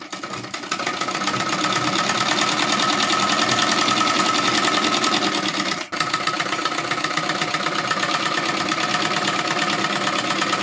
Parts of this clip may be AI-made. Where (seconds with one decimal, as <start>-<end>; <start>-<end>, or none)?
none